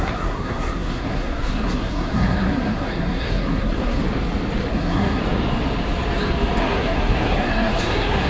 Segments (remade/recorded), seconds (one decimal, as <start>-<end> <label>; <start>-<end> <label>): 0.0-4.0 remade; 4.0-4.7 recorded; 4.7-5.2 remade; 5.2-6.6 recorded; 6.6-8.3 remade